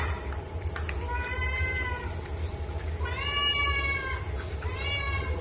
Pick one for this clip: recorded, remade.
recorded